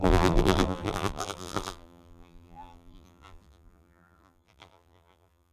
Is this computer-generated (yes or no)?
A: yes